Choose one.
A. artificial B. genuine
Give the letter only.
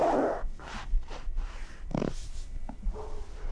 B